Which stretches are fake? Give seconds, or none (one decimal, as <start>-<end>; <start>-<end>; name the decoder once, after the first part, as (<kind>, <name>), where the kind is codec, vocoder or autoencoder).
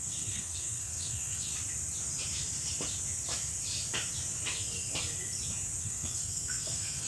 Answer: 0.0-1.5 (codec, SNAC); 5.8-7.1